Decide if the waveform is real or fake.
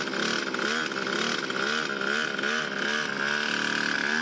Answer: real